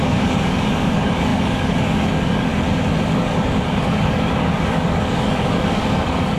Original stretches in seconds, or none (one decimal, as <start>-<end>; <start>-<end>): 2.5-3.1